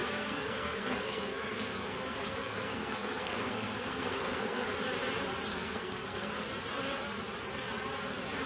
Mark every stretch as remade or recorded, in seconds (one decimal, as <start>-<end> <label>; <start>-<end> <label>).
0.0-4.7 remade; 4.7-5.5 recorded; 5.5-6.3 remade; 6.3-8.5 recorded